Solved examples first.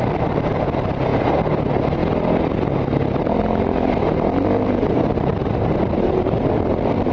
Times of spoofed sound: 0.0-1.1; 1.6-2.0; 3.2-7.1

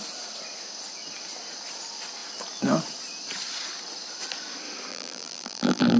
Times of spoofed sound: 4.9-6.0

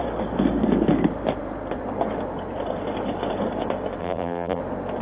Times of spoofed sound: 4.0-4.6

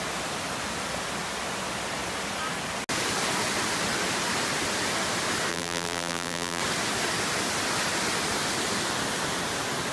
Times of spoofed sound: 5.5-6.6

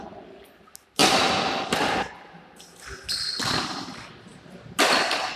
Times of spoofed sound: none

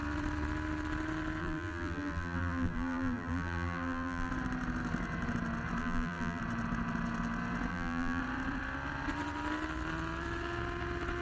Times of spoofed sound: 1.4-4.3; 5.8-6.4; 7.7-8.2

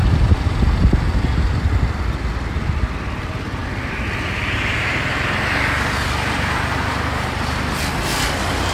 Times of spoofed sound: none